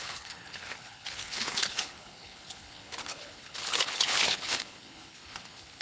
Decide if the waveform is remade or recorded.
remade